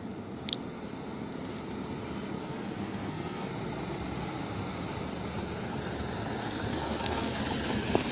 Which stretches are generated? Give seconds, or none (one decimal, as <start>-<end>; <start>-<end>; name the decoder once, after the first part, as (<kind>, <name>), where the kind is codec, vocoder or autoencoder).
2.4-3.5 (codec, SNAC); 6.4-7.4